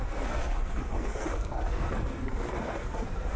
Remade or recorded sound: remade